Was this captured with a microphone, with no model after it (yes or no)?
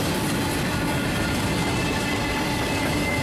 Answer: yes